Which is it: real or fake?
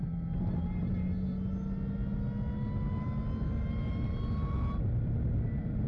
real